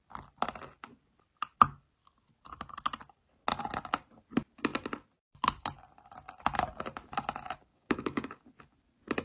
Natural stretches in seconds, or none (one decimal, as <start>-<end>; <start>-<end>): 0.0-7.7; 8.4-9.2